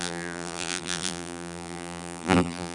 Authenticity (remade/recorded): remade